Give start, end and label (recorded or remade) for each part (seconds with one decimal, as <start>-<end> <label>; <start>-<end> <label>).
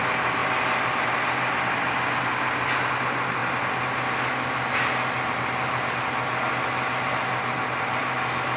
0.0-8.6 recorded